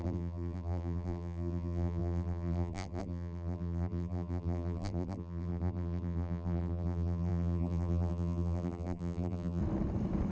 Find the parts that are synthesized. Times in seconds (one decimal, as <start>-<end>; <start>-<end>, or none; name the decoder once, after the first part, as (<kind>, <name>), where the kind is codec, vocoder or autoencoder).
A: 0.0-9.6 (vocoder, BigVGAN v2)